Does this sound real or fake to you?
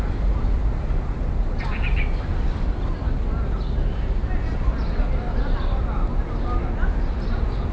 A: real